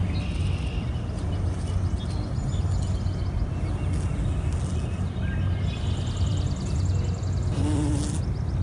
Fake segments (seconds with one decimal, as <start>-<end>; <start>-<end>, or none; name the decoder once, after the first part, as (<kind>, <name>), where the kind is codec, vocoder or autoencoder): none